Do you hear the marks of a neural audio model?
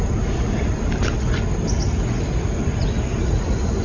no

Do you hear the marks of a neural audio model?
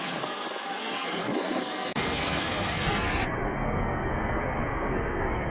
yes